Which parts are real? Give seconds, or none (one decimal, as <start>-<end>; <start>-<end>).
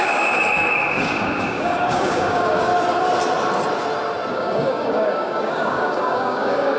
2.7-4.3